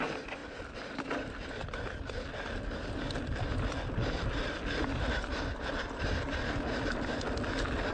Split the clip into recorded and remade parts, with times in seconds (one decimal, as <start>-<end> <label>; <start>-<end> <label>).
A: 0.0-7.9 recorded